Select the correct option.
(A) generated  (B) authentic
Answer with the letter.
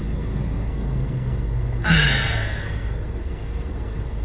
A